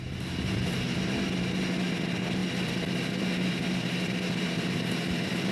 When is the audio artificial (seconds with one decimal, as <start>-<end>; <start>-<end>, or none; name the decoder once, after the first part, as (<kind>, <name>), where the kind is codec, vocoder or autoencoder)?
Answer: none

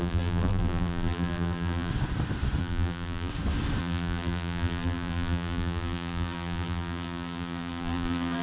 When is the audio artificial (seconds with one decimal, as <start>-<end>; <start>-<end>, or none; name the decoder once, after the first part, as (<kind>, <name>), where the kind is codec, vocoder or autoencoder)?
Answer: 0.0-1.9 (vocoder, BigVGAN v2); 2.6-3.3; 3.8-8.4

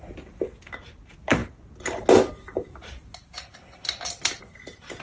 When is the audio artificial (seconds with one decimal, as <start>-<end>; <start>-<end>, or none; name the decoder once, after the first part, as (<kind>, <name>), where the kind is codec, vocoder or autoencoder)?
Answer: none

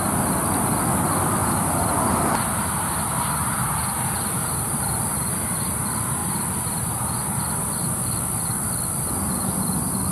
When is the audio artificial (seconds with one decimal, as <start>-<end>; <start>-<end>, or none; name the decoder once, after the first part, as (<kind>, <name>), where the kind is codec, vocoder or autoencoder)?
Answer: 1.4-5.7 (vocoder, BigVGAN v2); 6.2-7.2

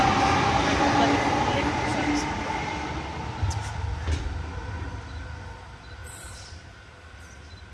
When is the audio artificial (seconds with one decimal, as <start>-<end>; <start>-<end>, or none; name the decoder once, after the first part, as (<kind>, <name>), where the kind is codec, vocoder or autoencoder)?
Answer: 1.9-2.4 (vocoder, BigVGAN v2); 6.0-6.7

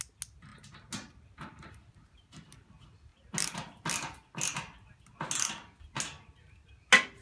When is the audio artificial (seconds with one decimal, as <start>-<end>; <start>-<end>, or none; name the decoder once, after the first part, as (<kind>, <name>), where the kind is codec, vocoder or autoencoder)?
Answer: none